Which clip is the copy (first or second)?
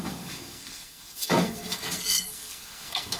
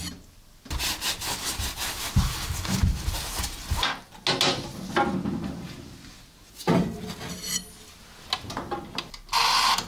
first